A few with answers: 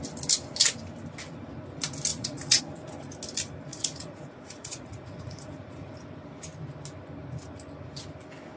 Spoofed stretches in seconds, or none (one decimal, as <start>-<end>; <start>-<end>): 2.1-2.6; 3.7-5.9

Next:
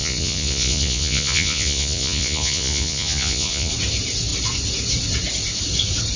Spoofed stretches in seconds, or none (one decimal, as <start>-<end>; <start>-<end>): 0.0-3.7

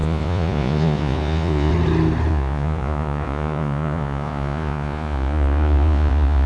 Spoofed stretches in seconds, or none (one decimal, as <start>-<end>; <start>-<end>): 0.0-1.7; 2.3-6.5